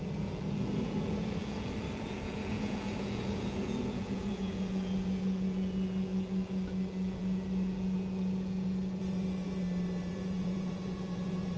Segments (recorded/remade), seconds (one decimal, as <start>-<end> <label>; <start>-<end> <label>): 0.0-9.6 remade; 9.6-10.1 recorded; 10.1-11.6 remade